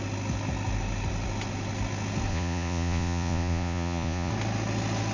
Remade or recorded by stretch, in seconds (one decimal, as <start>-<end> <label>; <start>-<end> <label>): 0.0-2.3 recorded; 2.3-4.3 remade; 4.3-5.1 recorded

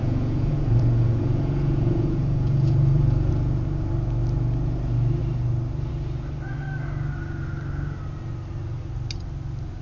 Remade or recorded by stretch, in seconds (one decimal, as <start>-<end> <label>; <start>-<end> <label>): 0.0-3.3 remade; 3.3-9.8 recorded

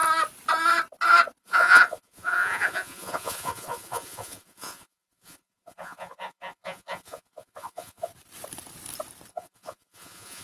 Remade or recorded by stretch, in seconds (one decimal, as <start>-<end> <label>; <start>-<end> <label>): 0.0-1.4 recorded; 1.4-8.1 remade; 8.1-9.3 recorded; 9.3-10.4 remade

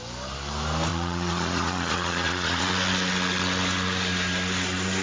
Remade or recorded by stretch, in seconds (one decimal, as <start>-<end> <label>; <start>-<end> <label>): 0.0-0.9 recorded; 0.9-2.6 remade; 2.6-5.0 recorded